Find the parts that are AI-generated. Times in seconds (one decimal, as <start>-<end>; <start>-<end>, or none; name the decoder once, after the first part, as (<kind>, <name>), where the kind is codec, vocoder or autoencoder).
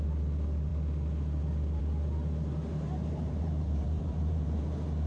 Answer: 2.7-4.6 (vocoder, BigVGAN v2)